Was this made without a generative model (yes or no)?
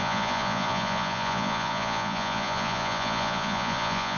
no